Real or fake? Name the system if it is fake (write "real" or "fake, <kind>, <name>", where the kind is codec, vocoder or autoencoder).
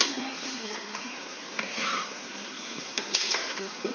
fake, codec, SNAC